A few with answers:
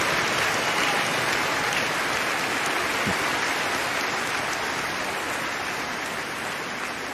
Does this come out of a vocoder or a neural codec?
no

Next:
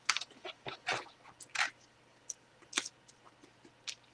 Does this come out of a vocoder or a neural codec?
no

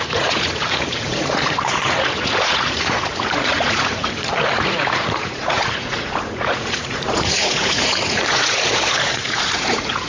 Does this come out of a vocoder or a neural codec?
yes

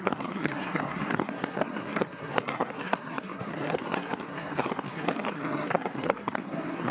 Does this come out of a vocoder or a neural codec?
yes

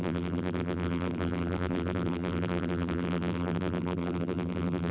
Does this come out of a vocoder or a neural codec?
yes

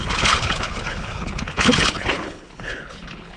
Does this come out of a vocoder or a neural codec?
yes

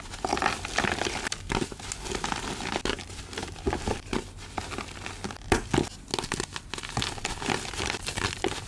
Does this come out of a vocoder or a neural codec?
no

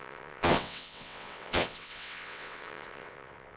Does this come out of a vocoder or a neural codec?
yes